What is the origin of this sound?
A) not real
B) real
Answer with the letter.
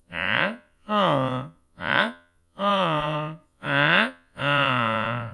A